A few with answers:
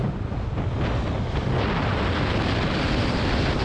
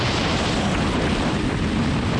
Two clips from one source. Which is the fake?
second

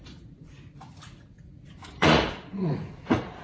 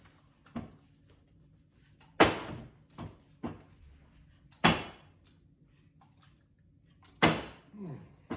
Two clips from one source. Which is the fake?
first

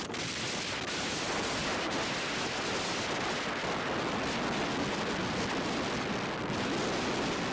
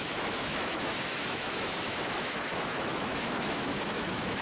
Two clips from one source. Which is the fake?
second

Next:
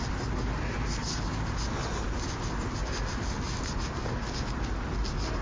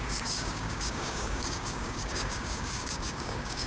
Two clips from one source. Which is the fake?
second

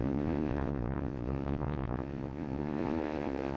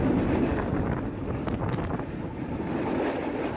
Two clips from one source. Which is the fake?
first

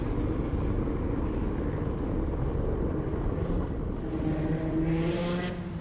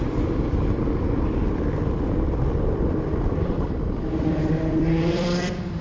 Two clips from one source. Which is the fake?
second